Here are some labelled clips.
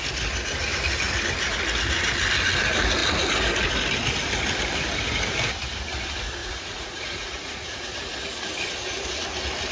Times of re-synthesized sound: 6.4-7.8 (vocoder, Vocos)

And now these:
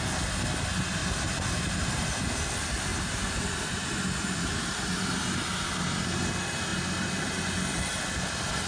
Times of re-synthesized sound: 1.0-2.2 (vocoder, BigVGAN v2); 2.9-5.2

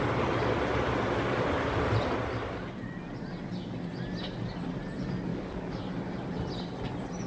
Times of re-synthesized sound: 5.3-5.8 (codec, DAC)

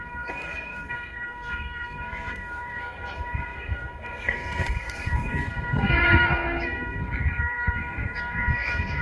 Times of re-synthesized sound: 0.0-9.0 (codec, SNAC)

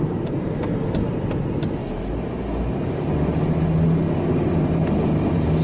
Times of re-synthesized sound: none